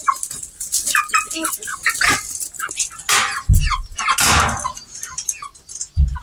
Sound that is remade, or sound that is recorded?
recorded